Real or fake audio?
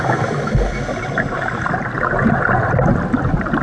real